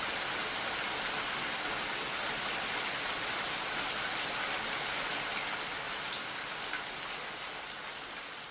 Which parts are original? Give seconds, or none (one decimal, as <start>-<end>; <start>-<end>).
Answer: 0.0-8.5